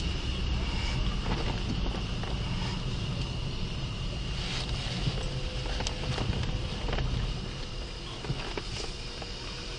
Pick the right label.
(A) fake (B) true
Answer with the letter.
B